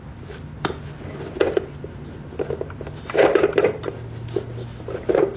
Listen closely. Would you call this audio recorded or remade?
recorded